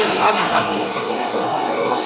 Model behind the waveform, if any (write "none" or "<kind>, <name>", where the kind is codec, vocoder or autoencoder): codec, SNAC